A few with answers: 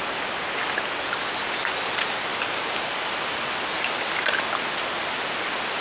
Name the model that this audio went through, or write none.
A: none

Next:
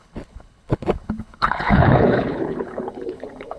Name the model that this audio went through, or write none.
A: codec, HILCodec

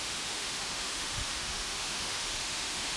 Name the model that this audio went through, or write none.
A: autoencoder, DAC-VAE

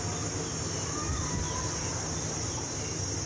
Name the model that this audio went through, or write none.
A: none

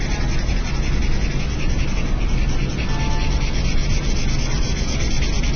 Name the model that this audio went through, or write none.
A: none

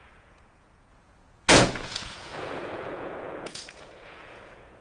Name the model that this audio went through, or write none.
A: vocoder, Vocos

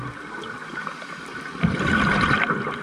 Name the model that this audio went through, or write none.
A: none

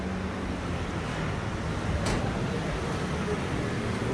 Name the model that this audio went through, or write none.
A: none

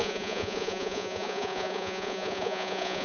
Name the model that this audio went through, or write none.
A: vocoder, Vocos